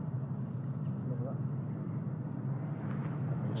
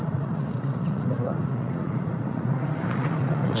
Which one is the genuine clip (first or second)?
first